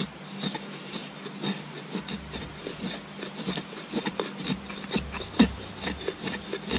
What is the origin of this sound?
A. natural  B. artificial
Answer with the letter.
A